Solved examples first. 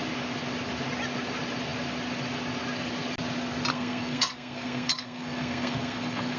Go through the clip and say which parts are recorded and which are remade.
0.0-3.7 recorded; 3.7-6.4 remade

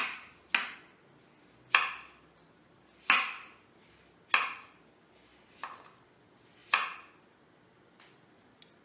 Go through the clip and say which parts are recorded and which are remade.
0.0-8.8 recorded